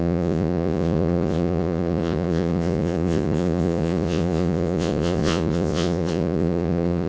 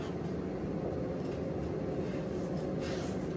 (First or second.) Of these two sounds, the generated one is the first